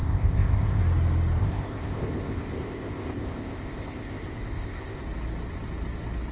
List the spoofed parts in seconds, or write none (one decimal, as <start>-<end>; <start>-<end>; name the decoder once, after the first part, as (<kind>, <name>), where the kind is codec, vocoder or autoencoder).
0.0-0.8 (codec, ZipCodec); 1.4-5.0